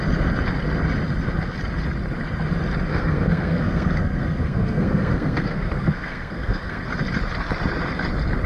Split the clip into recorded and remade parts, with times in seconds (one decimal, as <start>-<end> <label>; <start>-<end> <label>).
0.0-2.9 recorded; 2.9-6.8 remade; 6.8-8.5 recorded